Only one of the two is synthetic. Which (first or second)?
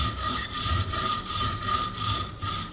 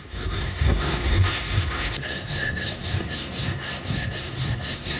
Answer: second